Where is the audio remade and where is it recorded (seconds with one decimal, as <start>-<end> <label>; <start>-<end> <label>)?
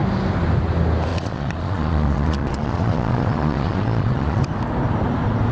0.0-1.1 recorded; 1.1-4.4 remade; 4.4-5.5 recorded